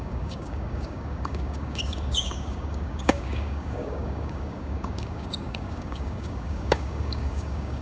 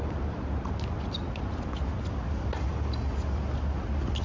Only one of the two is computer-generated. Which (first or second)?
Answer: first